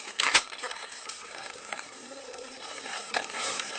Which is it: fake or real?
fake